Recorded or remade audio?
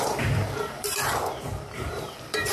remade